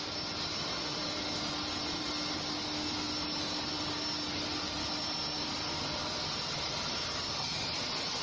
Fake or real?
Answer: real